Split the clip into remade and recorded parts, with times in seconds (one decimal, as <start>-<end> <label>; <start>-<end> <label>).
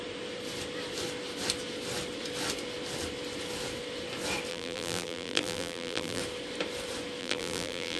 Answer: 0.0-4.5 recorded; 4.5-6.2 remade; 6.2-7.2 recorded; 7.2-8.0 remade